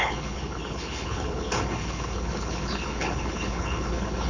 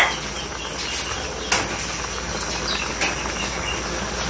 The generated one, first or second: first